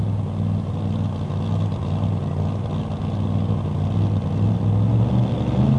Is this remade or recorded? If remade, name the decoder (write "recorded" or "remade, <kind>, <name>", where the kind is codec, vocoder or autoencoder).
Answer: recorded